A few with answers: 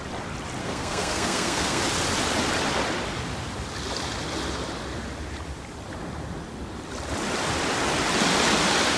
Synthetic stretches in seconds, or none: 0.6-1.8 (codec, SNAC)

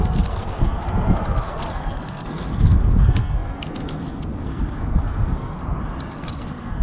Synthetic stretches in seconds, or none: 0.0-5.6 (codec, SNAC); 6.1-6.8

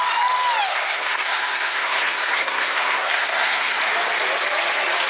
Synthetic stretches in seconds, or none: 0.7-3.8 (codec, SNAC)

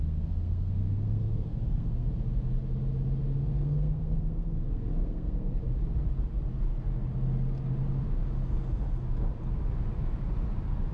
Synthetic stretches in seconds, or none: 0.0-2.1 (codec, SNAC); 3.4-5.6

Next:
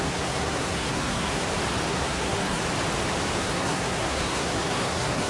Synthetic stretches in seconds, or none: 0.0-1.4 (codec, SNAC); 1.9-2.6; 3.4-5.3

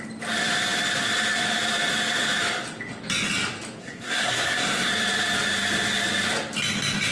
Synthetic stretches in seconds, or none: 3.8-4.9 (codec, SNAC)

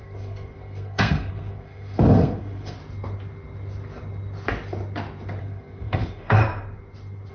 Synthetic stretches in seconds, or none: 0.0-2.8 (codec, SNAC); 5.4-6.4

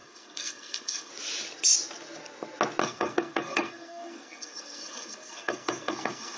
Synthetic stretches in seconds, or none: 0.0-1.1 (codec, SNAC); 2.8-6.4